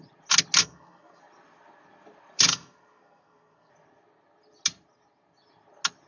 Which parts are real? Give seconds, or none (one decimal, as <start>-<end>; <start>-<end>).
0.0-0.6; 1.2-2.5; 3.7-6.1